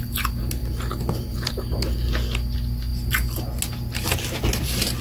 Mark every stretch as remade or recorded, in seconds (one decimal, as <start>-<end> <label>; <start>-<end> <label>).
0.0-5.0 recorded